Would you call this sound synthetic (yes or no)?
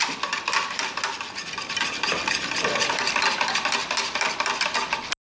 no